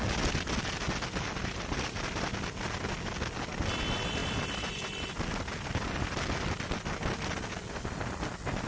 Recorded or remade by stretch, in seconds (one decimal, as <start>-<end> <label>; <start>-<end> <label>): 0.0-8.7 recorded